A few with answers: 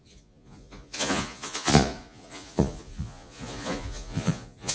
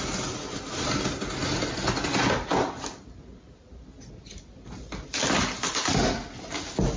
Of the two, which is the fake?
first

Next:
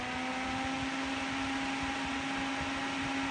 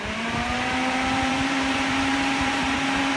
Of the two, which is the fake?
second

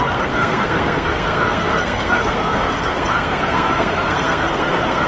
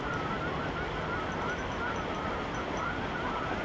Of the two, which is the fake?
first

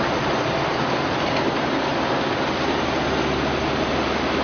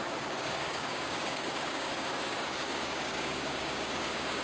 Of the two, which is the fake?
second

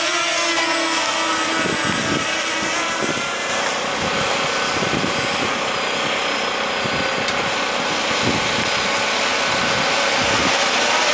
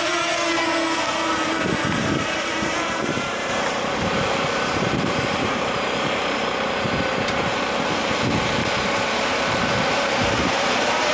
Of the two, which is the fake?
second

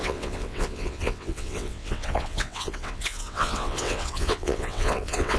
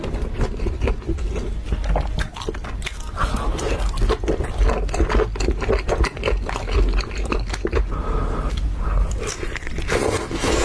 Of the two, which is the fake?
first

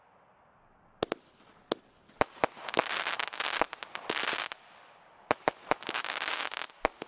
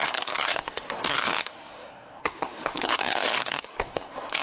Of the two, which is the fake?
second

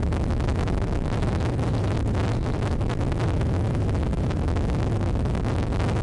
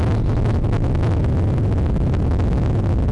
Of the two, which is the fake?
first